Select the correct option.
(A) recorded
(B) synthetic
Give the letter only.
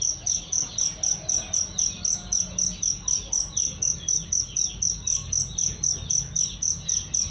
A